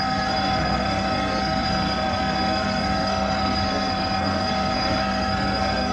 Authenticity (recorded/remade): remade